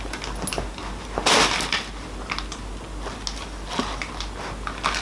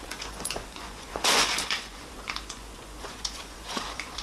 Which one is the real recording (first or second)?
first